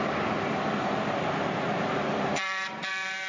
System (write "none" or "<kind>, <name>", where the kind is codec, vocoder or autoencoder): vocoder, BigVGAN v2